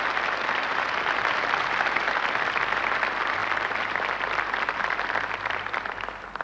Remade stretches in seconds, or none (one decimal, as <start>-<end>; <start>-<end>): 0.0-6.4